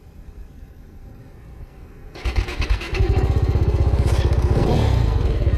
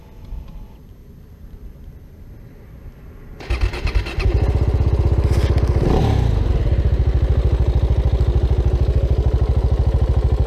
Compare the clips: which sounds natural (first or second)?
second